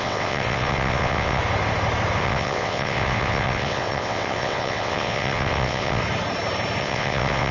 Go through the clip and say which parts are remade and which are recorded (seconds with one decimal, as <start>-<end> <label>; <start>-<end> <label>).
0.0-1.4 remade; 1.4-2.2 recorded; 2.2-6.0 remade; 6.0-6.8 recorded; 6.8-7.5 remade